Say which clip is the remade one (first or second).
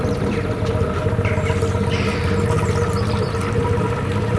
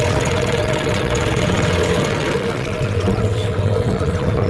second